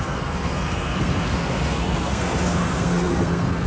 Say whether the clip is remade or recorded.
remade